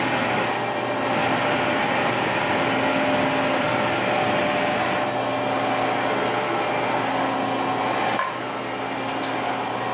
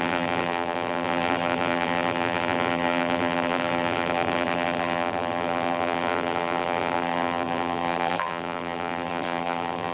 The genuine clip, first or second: first